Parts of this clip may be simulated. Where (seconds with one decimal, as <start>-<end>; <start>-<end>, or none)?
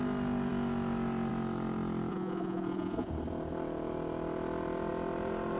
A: 2.1-3.1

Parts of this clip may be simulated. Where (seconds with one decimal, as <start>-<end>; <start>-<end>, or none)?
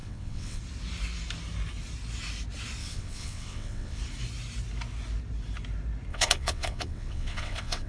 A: 0.0-0.6; 2.8-4.0; 6.1-7.9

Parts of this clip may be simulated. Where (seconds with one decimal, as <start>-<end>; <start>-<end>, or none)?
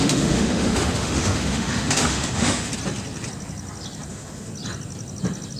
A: 0.0-2.7; 4.1-4.5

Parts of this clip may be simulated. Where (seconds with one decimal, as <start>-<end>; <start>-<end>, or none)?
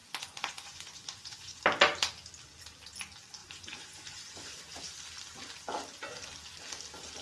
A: 0.0-1.6; 3.4-4.6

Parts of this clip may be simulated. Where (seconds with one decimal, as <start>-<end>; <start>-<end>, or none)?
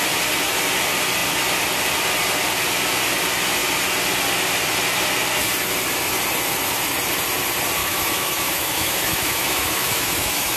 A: 7.8-10.6